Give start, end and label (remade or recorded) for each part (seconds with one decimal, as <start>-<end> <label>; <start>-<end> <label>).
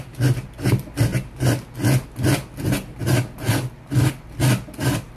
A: 0.0-5.2 recorded